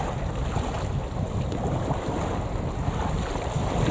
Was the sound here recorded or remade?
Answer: recorded